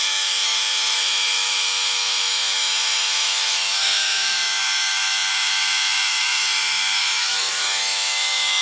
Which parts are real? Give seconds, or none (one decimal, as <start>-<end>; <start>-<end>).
none